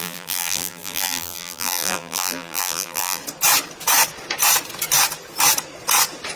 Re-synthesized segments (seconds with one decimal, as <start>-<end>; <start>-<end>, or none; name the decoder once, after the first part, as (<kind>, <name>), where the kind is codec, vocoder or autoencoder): 0.0-3.2 (vocoder, BigVGAN v2)